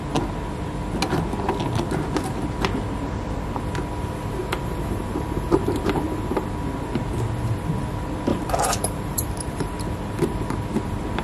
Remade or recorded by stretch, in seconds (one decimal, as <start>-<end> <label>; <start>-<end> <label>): 0.0-4.4 recorded; 4.4-6.4 remade; 6.4-8.3 recorded; 8.3-9.7 remade; 9.7-11.2 recorded